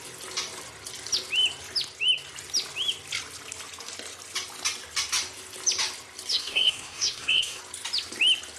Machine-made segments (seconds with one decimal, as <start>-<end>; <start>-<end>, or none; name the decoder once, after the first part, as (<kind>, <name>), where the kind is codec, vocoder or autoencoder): 6.3-7.6 (codec, SNAC)

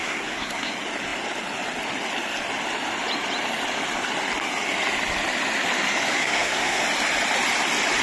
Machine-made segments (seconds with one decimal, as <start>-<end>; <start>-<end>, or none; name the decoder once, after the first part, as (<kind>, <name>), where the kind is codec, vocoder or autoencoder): 0.0-0.7 (codec, SNAC); 6.1-6.8

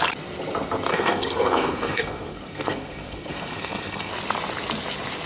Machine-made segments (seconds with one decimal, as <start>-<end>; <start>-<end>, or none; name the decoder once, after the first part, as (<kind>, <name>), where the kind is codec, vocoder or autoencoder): 0.9-4.1 (codec, SNAC)

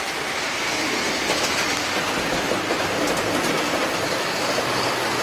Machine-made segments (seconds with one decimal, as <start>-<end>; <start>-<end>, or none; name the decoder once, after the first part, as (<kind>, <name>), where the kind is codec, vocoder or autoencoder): none

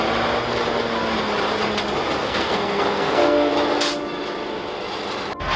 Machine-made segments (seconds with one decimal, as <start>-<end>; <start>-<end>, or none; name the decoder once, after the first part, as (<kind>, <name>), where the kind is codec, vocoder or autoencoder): 2.2-3.5 (codec, SNAC)

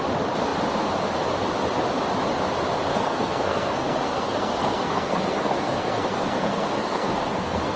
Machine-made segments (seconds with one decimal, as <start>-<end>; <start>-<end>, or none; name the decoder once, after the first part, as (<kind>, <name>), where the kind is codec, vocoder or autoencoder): 2.9-7.8 (codec, SNAC)